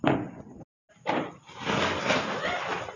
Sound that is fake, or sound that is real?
real